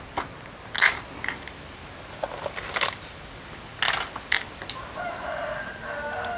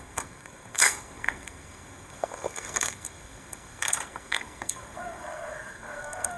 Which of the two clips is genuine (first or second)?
first